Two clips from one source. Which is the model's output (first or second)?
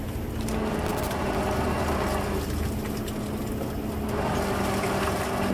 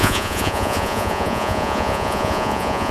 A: second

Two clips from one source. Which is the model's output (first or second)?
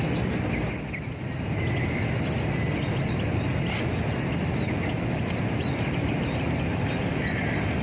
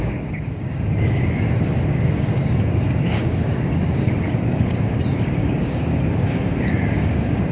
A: second